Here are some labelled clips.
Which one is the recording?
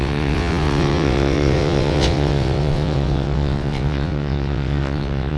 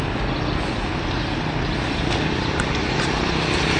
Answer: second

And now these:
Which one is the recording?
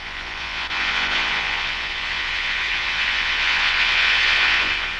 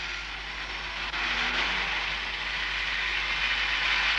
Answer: second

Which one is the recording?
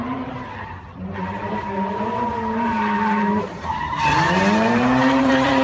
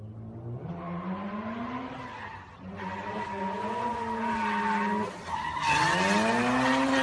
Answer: second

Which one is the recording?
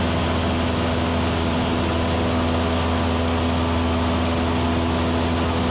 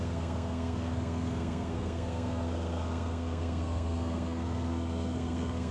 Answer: first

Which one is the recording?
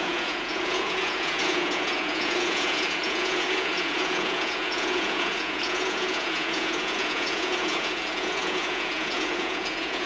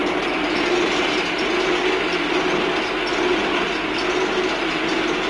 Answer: second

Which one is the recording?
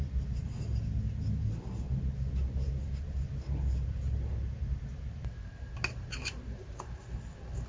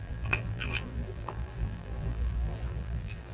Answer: first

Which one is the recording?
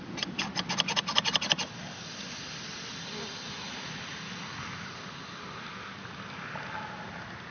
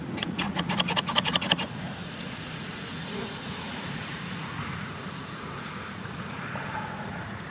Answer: first